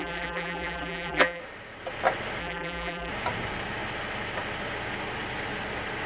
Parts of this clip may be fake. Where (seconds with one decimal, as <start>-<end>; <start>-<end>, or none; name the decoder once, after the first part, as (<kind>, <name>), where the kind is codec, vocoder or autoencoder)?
0.0-1.4 (vocoder, BigVGAN v2); 2.4-3.1